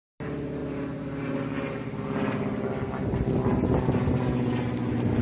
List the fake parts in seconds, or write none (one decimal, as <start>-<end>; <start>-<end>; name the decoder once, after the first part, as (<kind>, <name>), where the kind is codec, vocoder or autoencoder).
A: none